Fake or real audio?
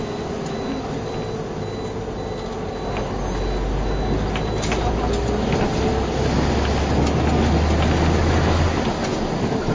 real